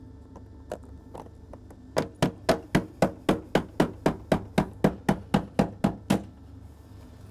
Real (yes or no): yes